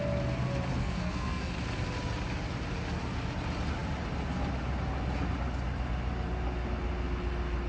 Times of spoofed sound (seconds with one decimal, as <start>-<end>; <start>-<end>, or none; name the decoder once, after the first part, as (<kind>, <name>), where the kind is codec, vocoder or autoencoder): 0.8-1.5 (codec, SNAC)